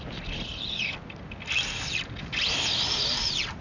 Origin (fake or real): real